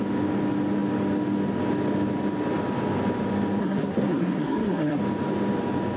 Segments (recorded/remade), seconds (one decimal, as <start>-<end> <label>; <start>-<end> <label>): 0.0-3.6 recorded; 3.6-5.0 remade; 5.0-6.0 recorded